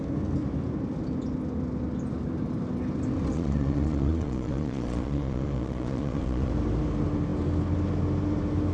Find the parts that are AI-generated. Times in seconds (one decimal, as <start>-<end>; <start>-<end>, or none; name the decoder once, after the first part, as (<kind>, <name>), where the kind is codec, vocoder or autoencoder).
3.3-6.5 (vocoder, Vocos)